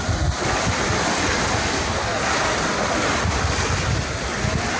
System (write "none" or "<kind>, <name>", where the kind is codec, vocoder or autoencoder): none